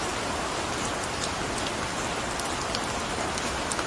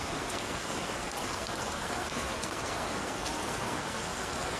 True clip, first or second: first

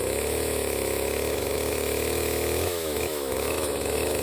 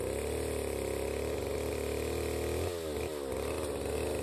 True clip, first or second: second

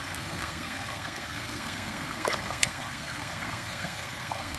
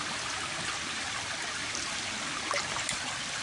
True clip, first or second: second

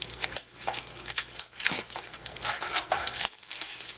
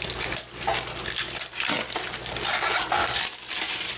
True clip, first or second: second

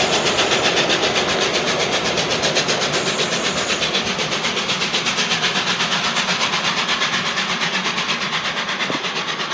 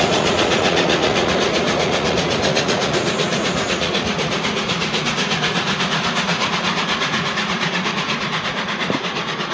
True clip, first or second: first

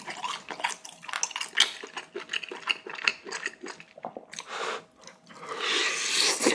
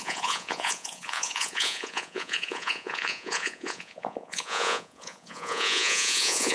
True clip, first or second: first